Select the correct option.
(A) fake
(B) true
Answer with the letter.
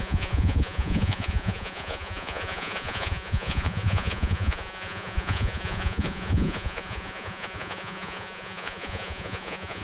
A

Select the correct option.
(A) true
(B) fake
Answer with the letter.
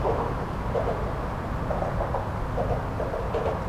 A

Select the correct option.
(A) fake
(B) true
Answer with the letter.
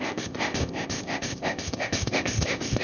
A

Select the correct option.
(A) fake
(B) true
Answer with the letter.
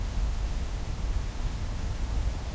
A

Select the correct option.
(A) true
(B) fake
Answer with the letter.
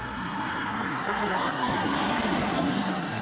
B